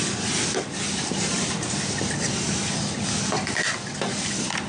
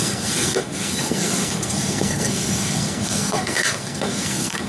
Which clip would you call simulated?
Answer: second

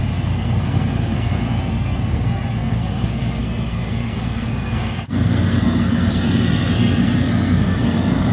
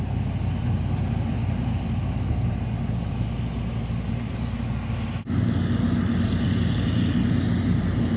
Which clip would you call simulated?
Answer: first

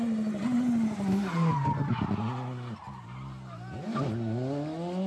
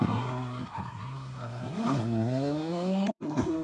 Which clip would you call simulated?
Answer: second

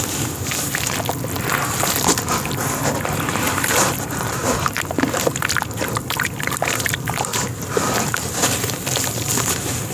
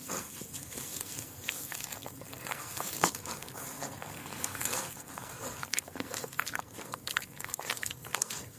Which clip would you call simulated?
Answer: second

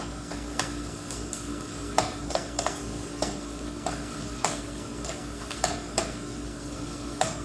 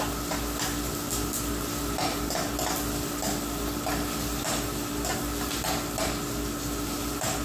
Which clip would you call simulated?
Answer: first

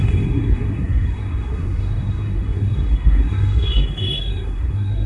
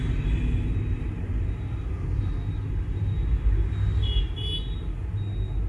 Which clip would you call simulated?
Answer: first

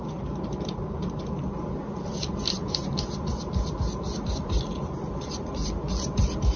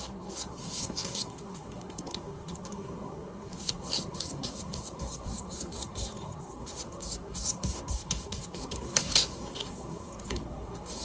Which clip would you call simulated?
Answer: second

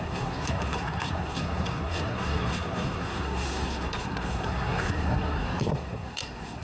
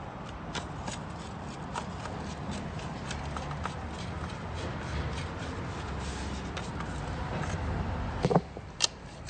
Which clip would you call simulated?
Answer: first